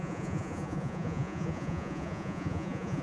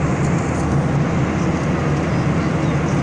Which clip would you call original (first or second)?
second